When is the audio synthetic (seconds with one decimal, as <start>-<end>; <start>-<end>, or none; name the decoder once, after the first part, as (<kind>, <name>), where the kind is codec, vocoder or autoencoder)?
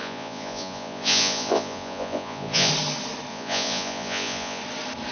0.0-2.7 (vocoder, Vocos); 3.3-4.6